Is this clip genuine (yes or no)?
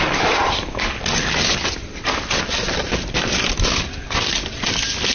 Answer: no